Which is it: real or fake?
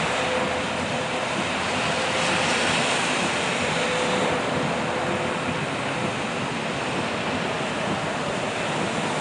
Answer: real